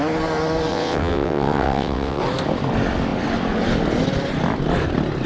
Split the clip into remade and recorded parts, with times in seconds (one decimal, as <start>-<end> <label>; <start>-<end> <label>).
0.0-0.7 recorded; 0.7-2.2 remade; 2.2-5.3 recorded